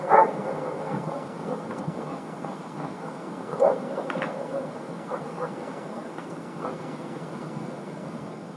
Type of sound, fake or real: fake